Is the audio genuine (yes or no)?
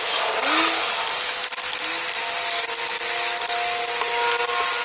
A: yes